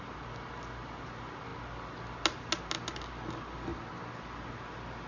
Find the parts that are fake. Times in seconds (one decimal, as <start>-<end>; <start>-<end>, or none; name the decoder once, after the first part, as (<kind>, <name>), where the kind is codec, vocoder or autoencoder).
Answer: none

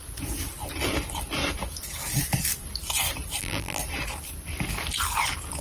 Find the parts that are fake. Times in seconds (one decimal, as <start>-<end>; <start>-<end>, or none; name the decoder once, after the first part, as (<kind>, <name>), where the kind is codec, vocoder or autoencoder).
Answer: 3.4-3.8 (vocoder, BigVGAN v2)

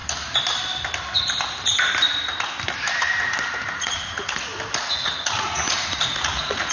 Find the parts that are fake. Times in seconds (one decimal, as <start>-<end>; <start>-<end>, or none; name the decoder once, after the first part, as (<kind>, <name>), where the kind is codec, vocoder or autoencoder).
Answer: 3.7-4.5 (vocoder, Vocos); 5.0-6.7

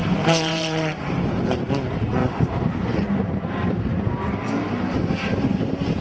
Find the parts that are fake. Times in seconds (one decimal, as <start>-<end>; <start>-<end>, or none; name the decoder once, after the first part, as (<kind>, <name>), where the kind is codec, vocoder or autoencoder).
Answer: 0.0-1.0 (vocoder, BigVGAN v2); 2.2-6.0

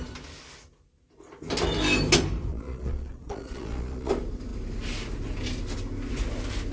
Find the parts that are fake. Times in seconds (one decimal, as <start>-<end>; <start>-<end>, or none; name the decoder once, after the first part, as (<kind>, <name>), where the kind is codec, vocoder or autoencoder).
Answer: 2.5-4.1 (vocoder, Vocos)

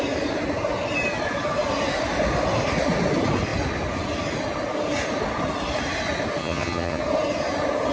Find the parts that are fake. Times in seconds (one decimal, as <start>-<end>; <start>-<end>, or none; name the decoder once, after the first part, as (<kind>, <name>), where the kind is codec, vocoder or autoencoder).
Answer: 6.4-7.0 (vocoder, HiFi-GAN)